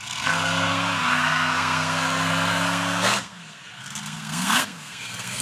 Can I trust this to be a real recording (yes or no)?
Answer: no